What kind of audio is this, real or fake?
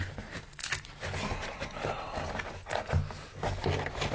real